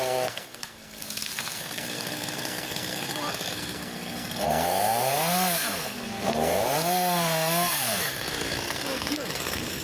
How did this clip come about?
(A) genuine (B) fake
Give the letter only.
B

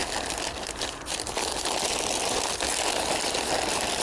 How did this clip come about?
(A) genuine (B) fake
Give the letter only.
A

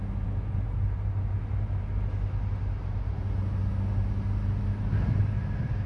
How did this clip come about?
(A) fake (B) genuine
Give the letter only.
B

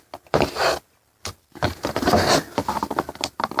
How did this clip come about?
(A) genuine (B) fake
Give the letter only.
A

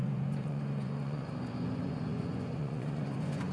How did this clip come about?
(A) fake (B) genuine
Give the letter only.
A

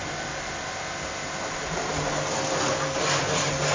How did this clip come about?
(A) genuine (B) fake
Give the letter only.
A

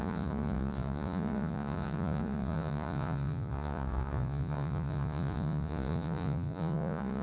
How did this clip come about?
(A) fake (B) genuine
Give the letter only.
A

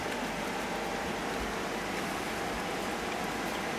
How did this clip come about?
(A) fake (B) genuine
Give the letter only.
B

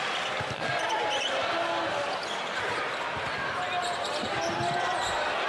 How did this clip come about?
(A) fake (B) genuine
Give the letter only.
B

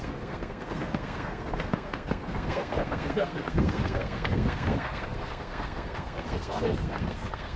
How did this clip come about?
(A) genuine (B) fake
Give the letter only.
B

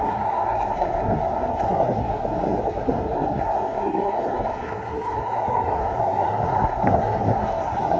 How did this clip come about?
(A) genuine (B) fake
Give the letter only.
B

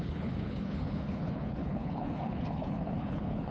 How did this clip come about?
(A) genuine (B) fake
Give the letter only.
B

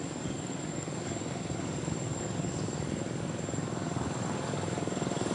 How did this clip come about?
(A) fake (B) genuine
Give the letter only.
A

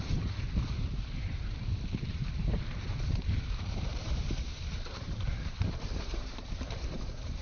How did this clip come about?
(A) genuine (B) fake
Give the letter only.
B